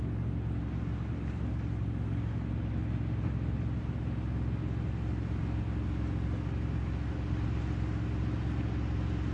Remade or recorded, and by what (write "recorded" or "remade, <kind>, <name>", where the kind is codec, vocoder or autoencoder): recorded